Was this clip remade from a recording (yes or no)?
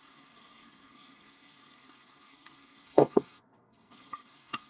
yes